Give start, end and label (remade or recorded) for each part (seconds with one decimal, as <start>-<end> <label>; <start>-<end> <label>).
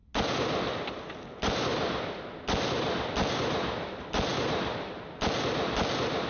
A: 0.0-6.3 recorded